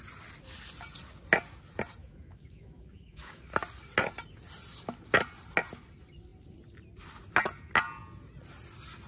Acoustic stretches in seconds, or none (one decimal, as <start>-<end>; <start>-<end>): 0.0-2.0; 3.4-9.1